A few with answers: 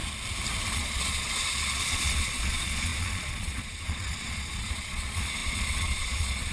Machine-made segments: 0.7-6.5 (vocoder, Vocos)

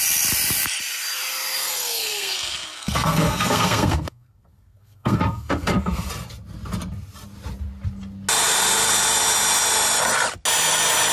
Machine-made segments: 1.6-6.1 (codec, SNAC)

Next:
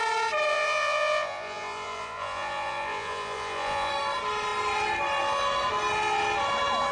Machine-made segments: 0.5-3.9 (vocoder, Vocos)

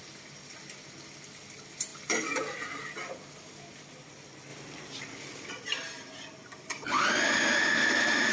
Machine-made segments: none

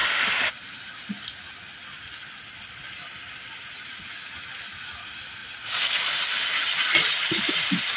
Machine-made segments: none

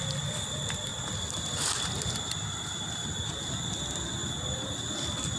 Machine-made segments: none